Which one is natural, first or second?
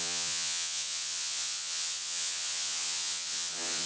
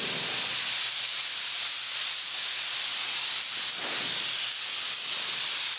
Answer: second